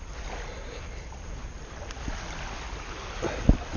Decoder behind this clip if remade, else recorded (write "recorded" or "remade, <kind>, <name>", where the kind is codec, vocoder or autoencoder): recorded